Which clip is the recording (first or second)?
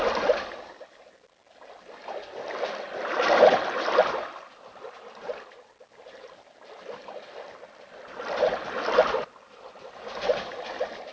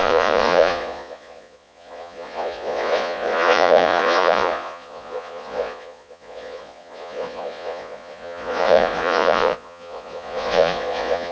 first